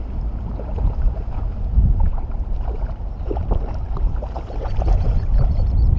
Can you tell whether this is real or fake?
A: fake